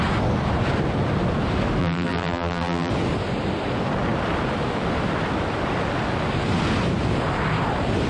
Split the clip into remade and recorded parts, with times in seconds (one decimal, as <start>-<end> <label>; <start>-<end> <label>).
0.0-1.8 recorded; 1.8-2.9 remade; 2.9-8.1 recorded